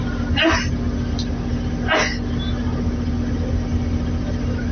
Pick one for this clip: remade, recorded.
recorded